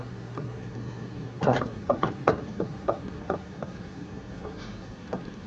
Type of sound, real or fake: fake